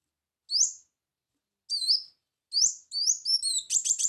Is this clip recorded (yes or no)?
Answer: yes